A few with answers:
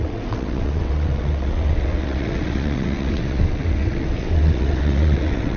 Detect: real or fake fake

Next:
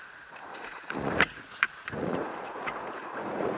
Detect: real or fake fake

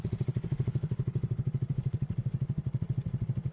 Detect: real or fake fake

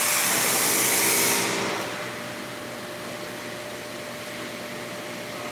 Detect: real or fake real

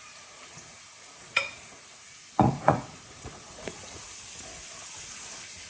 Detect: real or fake fake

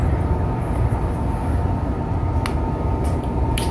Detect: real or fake real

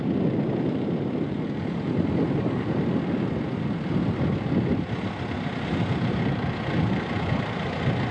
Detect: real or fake real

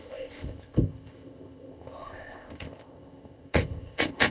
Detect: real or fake fake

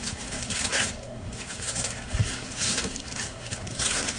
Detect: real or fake fake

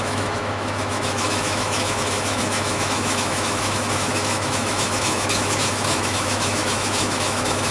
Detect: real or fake fake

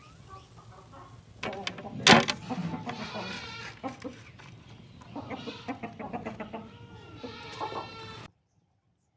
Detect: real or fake real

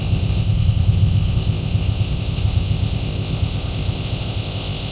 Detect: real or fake fake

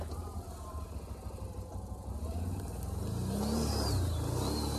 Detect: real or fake real